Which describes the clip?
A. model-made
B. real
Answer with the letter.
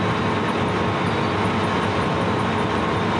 B